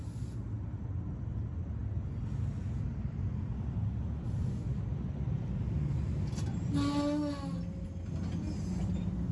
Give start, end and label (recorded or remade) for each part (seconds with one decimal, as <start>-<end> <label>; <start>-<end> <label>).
0.0-9.3 recorded